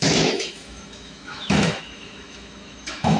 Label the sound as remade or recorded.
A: remade